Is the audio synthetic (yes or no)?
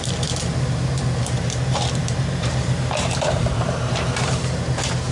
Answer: yes